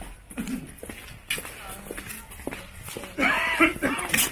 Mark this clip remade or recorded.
recorded